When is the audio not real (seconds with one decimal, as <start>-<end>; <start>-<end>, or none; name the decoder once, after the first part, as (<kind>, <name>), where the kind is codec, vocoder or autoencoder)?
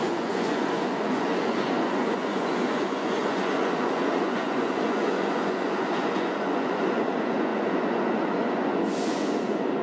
0.0-9.8 (vocoder, Vocos)